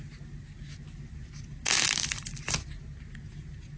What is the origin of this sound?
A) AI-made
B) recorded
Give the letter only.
B